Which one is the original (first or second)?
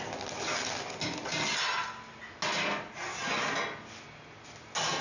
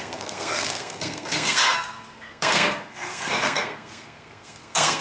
first